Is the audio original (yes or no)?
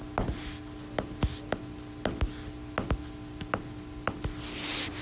yes